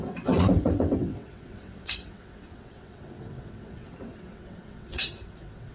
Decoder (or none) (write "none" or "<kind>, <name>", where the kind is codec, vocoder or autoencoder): vocoder, WaveNeXt